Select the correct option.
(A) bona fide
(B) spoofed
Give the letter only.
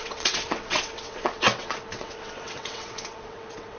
B